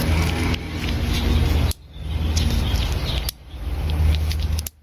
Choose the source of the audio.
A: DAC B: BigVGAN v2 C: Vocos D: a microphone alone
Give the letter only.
D